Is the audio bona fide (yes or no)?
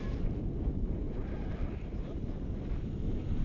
yes